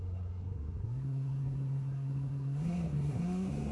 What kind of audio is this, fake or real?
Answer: fake